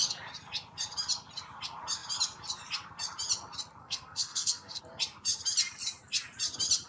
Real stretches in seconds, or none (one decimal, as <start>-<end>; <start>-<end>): 0.0-3.8; 4.8-6.9